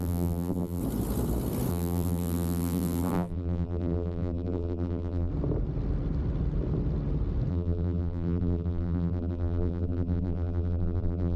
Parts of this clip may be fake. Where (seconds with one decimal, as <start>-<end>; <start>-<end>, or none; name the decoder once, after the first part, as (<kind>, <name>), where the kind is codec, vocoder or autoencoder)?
0.0-0.8 (vocoder, BigVGAN v2); 1.7-5.3; 7.5-11.4